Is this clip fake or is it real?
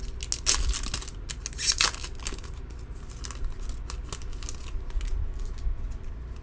real